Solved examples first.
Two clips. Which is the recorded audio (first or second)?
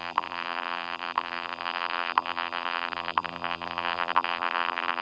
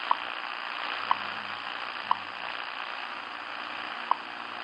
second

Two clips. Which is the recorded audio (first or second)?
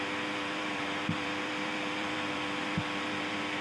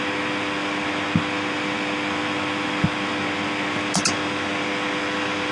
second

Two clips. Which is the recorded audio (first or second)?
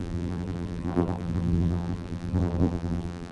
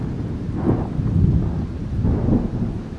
second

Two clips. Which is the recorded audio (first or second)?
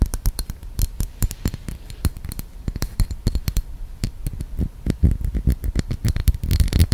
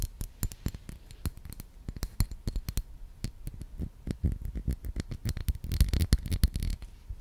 second